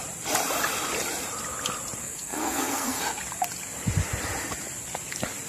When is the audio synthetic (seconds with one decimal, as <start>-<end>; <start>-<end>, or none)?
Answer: 2.0-3.0